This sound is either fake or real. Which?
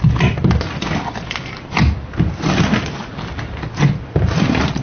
real